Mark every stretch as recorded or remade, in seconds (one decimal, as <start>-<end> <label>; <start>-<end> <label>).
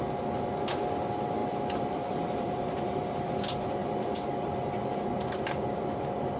0.0-1.4 recorded; 1.4-3.3 remade; 3.3-6.4 recorded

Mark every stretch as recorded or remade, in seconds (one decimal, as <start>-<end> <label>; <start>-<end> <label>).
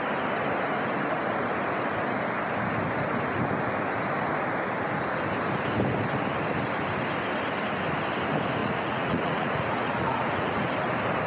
0.0-8.6 recorded; 8.6-10.6 remade; 10.6-11.3 recorded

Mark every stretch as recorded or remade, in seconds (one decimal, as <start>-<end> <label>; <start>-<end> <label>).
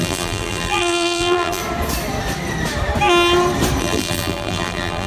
0.0-1.6 remade; 1.6-3.8 recorded; 3.8-5.1 remade